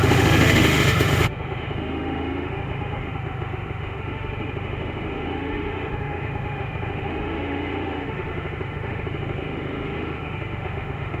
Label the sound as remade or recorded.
remade